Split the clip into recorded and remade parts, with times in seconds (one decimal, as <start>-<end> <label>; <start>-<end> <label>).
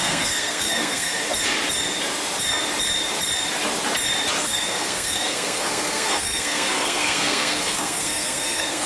0.0-1.1 remade; 1.1-4.4 recorded; 4.4-8.9 remade